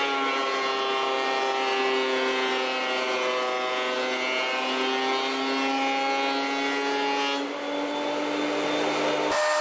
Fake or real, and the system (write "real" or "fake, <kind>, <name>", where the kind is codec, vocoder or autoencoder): real